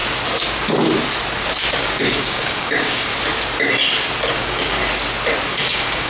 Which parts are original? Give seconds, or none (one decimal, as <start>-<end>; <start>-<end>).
0.0-1.8; 3.1-4.3; 4.8-5.5